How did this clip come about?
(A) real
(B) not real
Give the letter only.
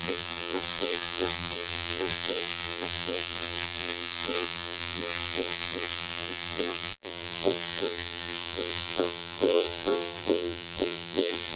B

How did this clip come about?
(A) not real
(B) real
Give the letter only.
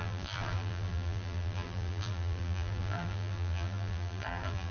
A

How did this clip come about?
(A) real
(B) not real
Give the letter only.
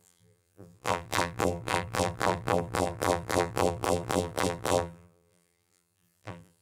B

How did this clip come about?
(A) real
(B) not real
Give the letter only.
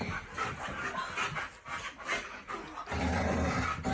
A